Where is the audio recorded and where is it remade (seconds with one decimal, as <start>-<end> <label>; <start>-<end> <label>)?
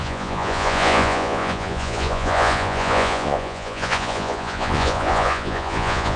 0.0-6.2 remade